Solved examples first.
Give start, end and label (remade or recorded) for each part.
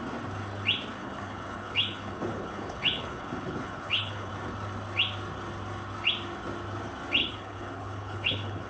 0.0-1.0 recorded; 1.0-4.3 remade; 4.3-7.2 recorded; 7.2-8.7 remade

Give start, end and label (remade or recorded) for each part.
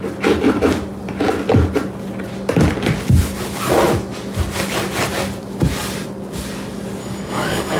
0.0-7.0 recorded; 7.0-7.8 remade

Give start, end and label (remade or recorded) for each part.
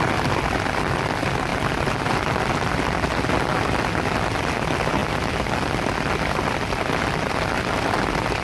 0.0-8.4 recorded